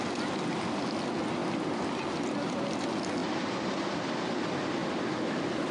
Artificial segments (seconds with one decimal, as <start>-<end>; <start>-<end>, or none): 3.2-3.9; 4.8-5.7